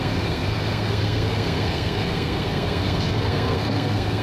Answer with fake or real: fake